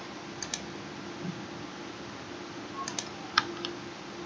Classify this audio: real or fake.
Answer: real